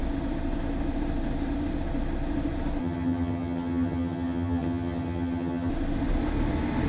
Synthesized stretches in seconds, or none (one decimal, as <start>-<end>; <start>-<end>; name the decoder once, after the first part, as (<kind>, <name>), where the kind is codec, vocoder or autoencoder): 2.8-5.7 (vocoder, HiFi-GAN)